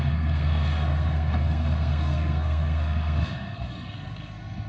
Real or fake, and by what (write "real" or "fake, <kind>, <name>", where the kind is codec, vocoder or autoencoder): fake, codec, SNAC